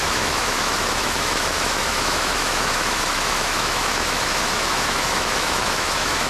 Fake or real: fake